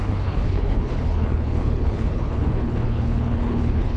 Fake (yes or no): yes